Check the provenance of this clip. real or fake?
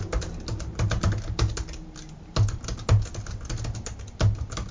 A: real